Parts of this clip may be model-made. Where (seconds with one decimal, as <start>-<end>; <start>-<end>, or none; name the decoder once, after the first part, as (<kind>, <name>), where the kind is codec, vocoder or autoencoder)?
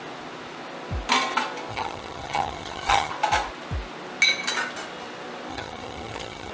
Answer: 1.7-3.1 (vocoder, HiFi-GAN); 5.5-6.5